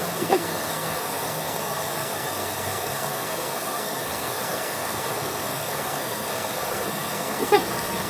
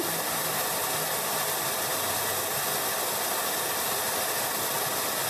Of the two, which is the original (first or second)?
second